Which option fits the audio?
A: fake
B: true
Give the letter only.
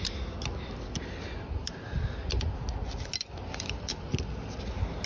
B